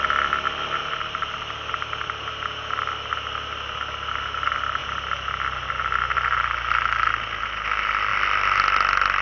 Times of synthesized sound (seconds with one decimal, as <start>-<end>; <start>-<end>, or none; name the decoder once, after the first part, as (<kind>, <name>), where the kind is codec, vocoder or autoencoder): none